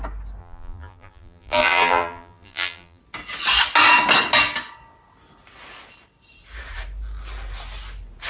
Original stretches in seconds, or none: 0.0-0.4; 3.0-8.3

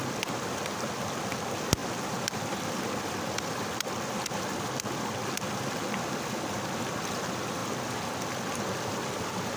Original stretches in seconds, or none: 0.0-1.8; 5.7-9.6

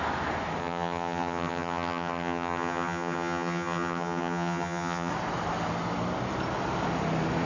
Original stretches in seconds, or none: 0.0-0.6; 5.1-7.5

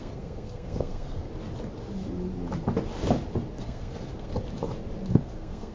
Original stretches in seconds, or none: 1.3-3.6; 4.3-5.1

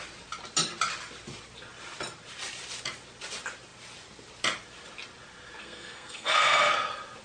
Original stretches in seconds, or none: 0.0-5.6; 6.7-7.2